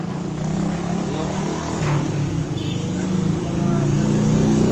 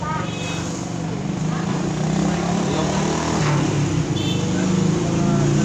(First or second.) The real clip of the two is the second